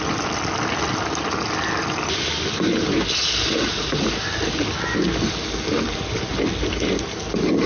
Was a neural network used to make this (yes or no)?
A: no